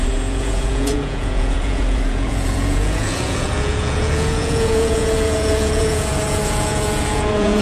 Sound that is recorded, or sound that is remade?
remade